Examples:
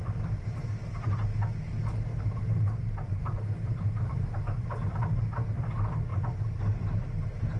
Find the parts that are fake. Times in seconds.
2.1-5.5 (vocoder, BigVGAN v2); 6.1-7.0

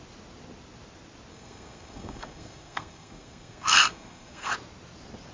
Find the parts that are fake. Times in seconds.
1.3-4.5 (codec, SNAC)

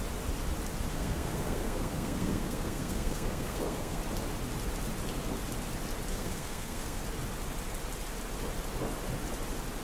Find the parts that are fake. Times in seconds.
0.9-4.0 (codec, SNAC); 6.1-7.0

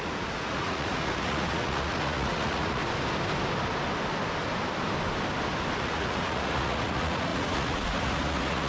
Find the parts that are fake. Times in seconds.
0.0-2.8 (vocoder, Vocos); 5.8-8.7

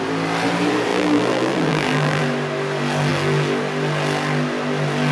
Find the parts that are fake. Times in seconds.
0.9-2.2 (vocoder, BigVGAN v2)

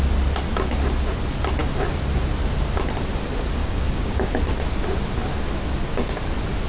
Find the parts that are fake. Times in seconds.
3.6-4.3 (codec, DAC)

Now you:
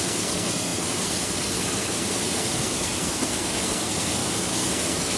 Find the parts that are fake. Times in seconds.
0.0-5.2 (codec, SNAC)